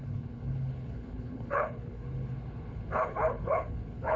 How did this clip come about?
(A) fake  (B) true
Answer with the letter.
A